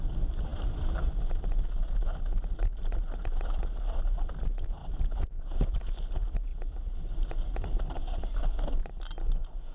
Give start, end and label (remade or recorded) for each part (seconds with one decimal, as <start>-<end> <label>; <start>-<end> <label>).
0.0-4.8 recorded; 4.8-5.8 remade; 5.8-9.7 recorded